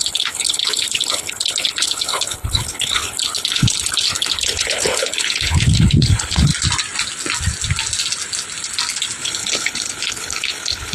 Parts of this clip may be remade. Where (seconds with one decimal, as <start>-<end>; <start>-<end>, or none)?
0.0-6.5; 9.2-10.9